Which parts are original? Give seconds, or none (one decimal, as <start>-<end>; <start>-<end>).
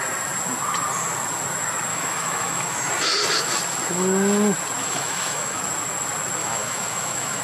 0.0-1.9; 2.9-4.8; 5.6-6.4